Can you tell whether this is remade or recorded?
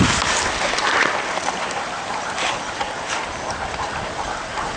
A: remade